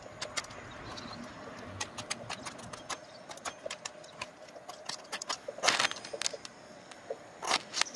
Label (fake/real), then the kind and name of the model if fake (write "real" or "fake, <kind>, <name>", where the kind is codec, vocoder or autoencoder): real